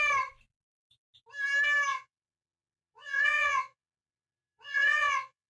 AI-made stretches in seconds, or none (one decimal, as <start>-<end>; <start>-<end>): 1.9-5.5